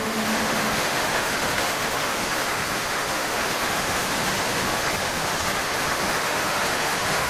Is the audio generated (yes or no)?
yes